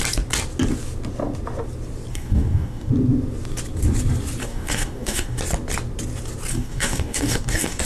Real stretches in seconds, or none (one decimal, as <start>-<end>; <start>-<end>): 0.0-2.1; 2.9-4.4; 5.4-6.5